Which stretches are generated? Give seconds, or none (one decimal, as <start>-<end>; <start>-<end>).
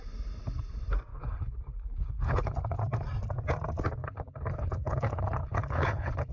1.1-2.8; 4.0-6.3